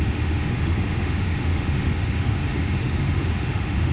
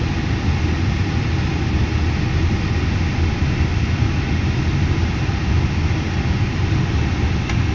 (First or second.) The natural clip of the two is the second